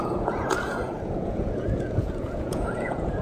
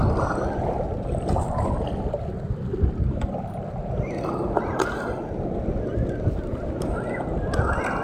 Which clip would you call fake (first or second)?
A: first